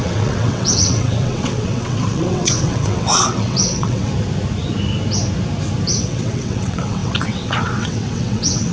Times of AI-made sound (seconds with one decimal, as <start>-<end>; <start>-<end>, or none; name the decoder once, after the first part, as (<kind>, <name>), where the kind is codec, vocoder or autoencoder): 0.0-4.1 (vocoder, WaveNeXt); 5.9-8.7